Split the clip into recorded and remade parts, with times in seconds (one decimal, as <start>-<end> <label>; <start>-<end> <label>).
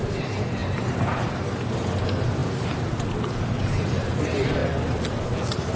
0.0-2.4 recorded; 2.4-2.9 remade; 2.9-5.8 recorded